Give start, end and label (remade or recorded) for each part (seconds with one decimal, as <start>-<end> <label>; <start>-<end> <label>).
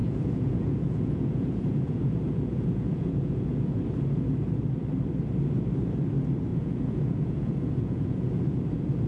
0.0-3.8 remade; 3.8-6.5 recorded; 6.5-8.6 remade; 8.6-9.1 recorded